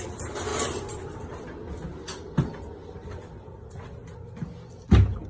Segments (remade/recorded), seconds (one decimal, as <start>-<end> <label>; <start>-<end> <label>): 0.0-5.3 recorded